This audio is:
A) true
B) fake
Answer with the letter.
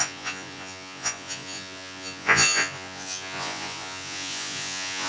B